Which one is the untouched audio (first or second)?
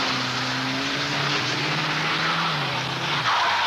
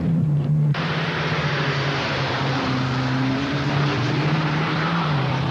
first